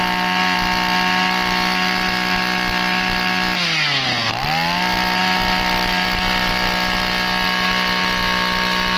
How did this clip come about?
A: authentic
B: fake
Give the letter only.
A